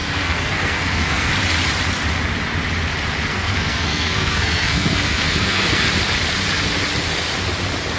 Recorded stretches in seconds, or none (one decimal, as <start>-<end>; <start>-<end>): 1.3-3.3; 5.9-8.0